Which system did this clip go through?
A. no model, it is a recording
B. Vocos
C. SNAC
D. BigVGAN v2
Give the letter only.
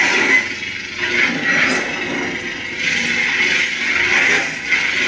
A